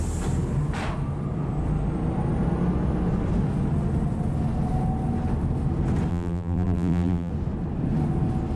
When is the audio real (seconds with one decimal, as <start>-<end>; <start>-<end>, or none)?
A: 0.0-6.1; 7.3-8.6